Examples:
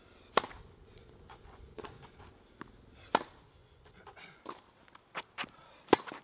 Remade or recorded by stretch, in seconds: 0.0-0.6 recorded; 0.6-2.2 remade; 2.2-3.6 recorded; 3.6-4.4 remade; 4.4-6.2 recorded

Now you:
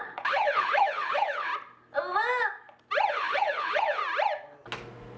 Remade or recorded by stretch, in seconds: 0.0-1.5 remade; 1.5-3.1 recorded; 3.1-4.0 remade; 4.0-5.2 recorded

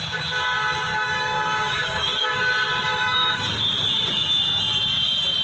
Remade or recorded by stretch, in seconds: 0.0-0.9 recorded; 0.9-2.4 remade; 2.4-2.9 recorded; 2.9-3.5 remade; 3.5-5.4 recorded

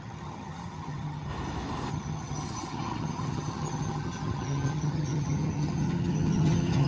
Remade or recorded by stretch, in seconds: 0.0-1.3 remade; 1.3-1.9 recorded; 1.9-6.9 remade

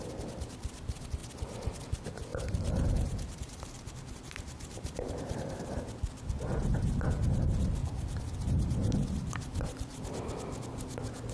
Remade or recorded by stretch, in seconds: 0.0-2.3 recorded; 2.3-5.8 remade; 5.8-7.8 recorded; 7.8-8.6 remade; 8.6-11.3 recorded

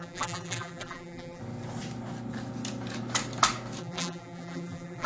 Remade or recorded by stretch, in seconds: 0.0-1.4 remade; 1.4-3.8 recorded; 3.8-5.1 remade

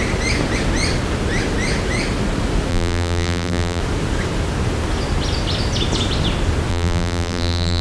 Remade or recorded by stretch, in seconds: 0.0-2.7 recorded; 2.7-3.8 remade; 3.8-6.7 recorded; 6.7-7.8 remade

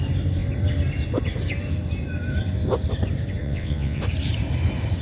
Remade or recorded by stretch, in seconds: 0.0-3.4 recorded; 3.4-4.0 remade; 4.0-5.0 recorded